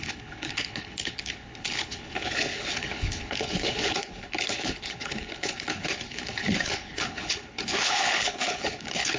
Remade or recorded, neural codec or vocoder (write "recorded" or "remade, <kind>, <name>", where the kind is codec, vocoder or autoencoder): remade, codec, HILCodec